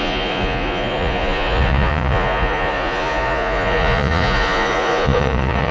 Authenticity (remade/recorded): remade